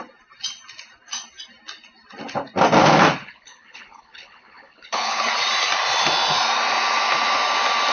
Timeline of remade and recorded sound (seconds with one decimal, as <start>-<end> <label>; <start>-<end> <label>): 0.0-3.2 recorded; 3.2-5.2 remade; 5.2-7.9 recorded